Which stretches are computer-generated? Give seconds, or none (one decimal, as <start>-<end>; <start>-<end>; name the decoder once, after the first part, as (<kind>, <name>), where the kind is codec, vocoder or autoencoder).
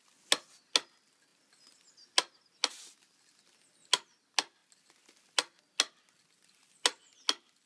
none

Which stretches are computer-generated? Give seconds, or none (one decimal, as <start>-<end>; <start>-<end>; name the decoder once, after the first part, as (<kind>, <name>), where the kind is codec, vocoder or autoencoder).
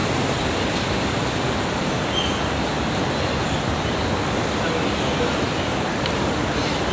none